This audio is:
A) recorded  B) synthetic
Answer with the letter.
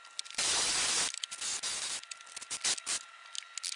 A